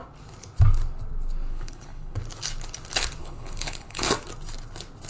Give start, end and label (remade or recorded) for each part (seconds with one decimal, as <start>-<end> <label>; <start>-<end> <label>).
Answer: 0.0-1.5 recorded; 1.5-2.2 remade; 2.2-3.2 recorded; 3.2-4.1 remade; 4.1-5.1 recorded